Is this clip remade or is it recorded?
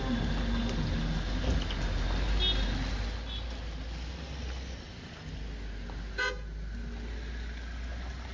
recorded